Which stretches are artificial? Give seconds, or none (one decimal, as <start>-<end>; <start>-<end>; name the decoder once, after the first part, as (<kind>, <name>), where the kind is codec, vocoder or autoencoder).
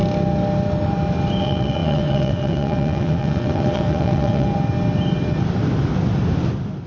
1.4-4.5 (vocoder, WaveNeXt)